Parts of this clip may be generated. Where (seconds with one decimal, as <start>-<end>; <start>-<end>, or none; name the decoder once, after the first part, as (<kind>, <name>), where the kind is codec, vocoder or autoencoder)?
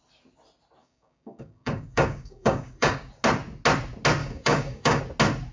0.8-3.1 (codec, DAC); 4.2-5.0